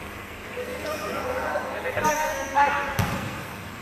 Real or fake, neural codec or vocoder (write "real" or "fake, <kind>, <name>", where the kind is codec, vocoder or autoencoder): fake, codec, SNAC